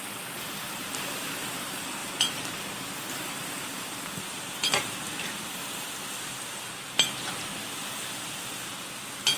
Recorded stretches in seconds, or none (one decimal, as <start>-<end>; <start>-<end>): 0.0-2.0; 6.4-7.5; 8.1-9.4